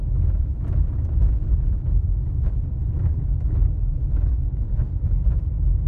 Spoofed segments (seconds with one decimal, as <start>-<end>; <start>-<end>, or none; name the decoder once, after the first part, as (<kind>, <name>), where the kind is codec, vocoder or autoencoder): 3.8-4.8 (vocoder, Vocos)